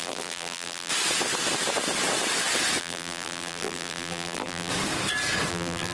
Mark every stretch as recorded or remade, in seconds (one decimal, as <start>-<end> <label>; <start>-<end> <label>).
0.0-0.9 remade; 0.9-2.8 recorded; 2.8-4.7 remade; 4.7-5.5 recorded; 5.5-5.9 remade